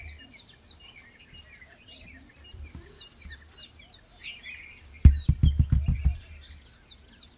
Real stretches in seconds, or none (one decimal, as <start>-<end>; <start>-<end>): 0.0-7.4